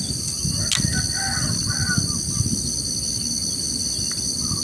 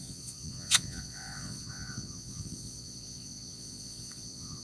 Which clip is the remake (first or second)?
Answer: second